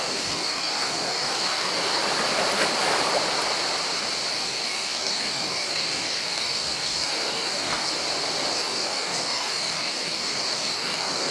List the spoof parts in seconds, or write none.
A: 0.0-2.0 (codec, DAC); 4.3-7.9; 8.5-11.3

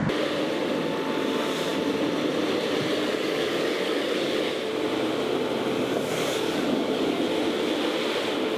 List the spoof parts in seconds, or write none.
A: 3.0-4.5 (codec, DAC); 5.9-7.2

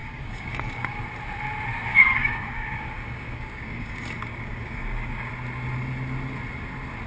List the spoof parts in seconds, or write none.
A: 0.0-1.0 (codec, DAC); 1.9-5.3

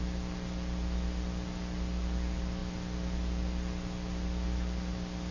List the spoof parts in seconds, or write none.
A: none

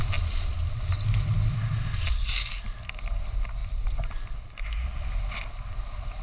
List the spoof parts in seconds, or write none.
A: none

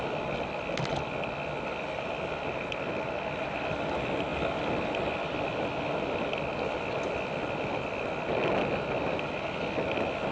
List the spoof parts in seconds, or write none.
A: none

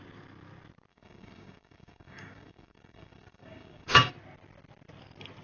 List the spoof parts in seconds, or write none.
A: 0.9-4.1 (codec, DAC)